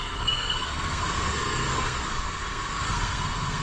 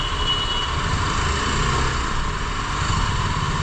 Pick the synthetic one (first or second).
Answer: first